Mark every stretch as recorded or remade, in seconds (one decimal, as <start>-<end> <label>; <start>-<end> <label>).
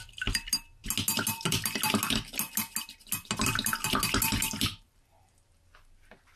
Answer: 0.0-6.4 recorded